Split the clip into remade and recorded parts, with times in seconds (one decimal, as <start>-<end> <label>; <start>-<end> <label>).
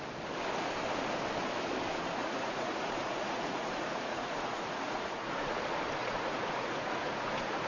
0.0-2.2 recorded; 2.2-5.6 remade; 5.6-6.0 recorded; 6.0-7.7 remade